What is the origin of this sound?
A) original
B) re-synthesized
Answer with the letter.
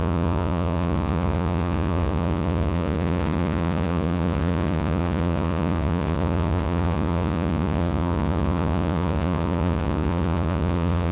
B